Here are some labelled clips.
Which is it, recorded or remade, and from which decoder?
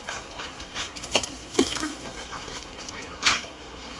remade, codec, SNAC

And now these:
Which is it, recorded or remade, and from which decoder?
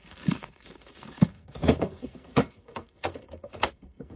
remade, codec, SNAC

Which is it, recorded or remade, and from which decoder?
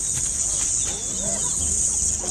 recorded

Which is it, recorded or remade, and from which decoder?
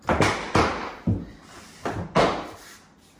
recorded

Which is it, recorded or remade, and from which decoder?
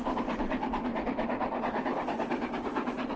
recorded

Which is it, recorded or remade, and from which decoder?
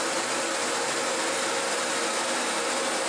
recorded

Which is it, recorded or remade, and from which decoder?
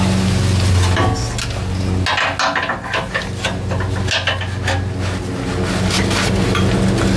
recorded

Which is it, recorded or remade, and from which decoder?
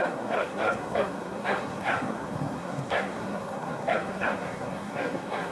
remade, codec, SNAC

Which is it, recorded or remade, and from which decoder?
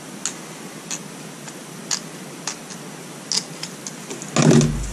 recorded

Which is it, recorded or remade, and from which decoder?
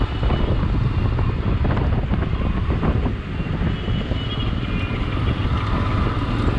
recorded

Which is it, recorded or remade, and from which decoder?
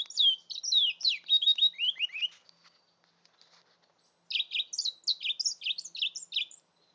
recorded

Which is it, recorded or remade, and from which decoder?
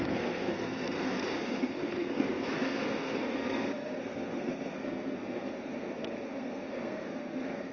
remade, codec, SNAC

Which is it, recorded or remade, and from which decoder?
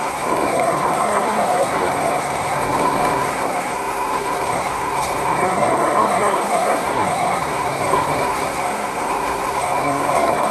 remade, codec, SNAC